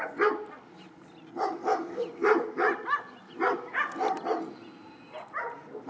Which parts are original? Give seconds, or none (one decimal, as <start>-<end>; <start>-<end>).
0.0-5.9